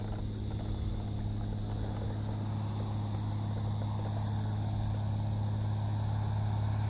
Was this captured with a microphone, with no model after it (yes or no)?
yes